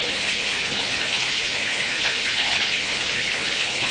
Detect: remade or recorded remade